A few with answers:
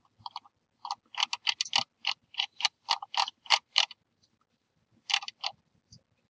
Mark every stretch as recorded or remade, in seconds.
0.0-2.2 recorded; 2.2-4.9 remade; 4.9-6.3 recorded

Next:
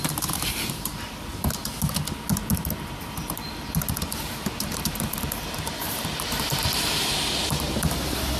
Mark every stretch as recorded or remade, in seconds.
0.0-0.9 remade; 0.9-4.6 recorded; 4.6-8.4 remade

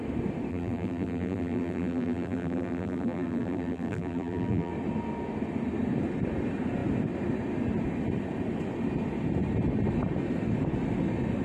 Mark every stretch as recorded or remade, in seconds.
0.0-0.5 recorded; 0.5-4.7 remade; 4.7-11.4 recorded

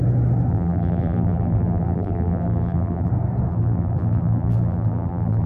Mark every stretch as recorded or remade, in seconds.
0.0-0.5 recorded; 0.5-3.1 remade; 3.1-3.5 recorded; 3.5-5.5 remade

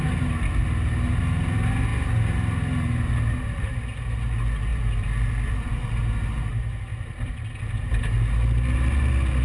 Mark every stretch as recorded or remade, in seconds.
0.0-0.6 recorded; 0.6-1.2 remade; 1.2-4.7 recorded; 4.7-6.0 remade; 6.0-6.9 recorded; 6.9-7.6 remade; 7.6-9.4 recorded

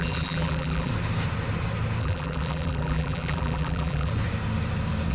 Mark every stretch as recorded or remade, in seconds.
0.0-0.9 remade; 0.9-2.0 recorded; 2.0-4.1 remade; 4.1-5.1 recorded

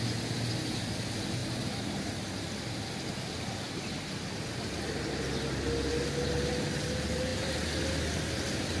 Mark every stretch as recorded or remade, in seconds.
0.0-8.8 recorded